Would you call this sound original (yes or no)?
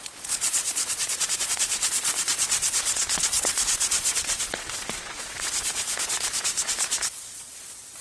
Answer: no